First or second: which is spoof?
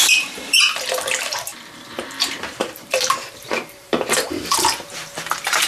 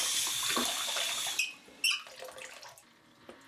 first